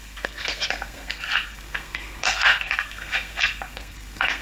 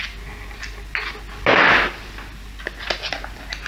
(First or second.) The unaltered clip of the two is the second